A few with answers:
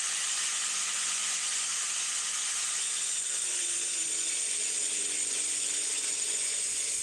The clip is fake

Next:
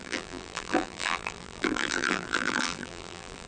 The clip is fake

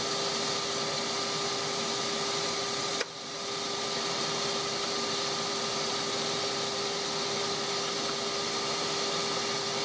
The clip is real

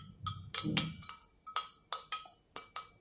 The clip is real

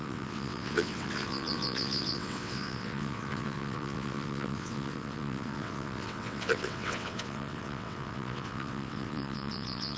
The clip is fake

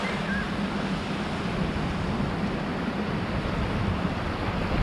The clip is fake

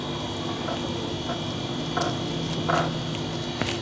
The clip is real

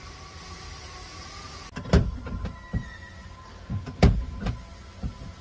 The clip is real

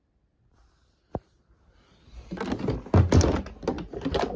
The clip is real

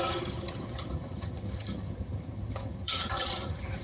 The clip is fake